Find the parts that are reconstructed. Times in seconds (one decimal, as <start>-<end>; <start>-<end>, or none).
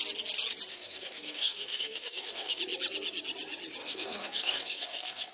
0.7-2.6; 3.8-5.3